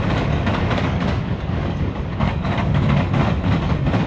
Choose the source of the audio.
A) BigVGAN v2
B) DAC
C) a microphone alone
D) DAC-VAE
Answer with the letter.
B